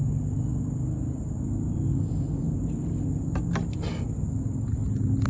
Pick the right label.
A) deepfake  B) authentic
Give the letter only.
B